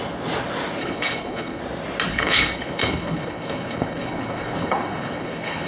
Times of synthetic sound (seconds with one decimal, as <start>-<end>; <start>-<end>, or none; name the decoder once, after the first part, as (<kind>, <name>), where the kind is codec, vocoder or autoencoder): 0.8-1.6 (codec, HILCodec); 2.1-5.7